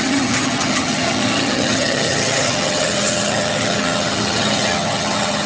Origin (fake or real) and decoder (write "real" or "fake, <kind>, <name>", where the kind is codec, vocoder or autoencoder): fake, vocoder, HiFi-GAN